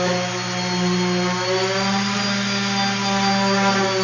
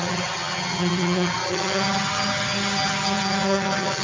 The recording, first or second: first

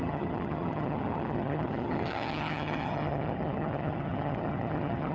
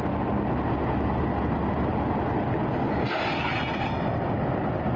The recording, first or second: second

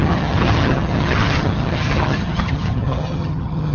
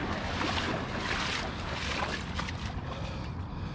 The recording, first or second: second